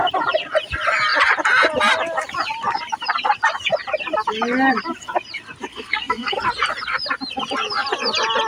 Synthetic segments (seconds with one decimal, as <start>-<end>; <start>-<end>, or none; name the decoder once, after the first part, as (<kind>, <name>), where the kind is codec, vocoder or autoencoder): 5.7-6.4 (codec, SNAC)